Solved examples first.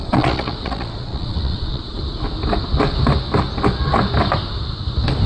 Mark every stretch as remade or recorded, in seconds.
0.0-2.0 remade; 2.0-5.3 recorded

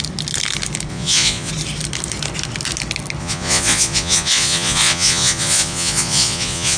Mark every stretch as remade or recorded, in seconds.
0.0-0.9 recorded; 0.9-1.5 remade; 1.5-3.2 recorded; 3.2-6.8 remade

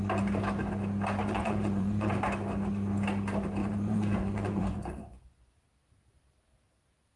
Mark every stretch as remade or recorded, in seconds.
0.0-1.2 recorded; 1.2-2.1 remade; 2.1-3.6 recorded; 3.6-5.6 remade; 5.6-7.2 recorded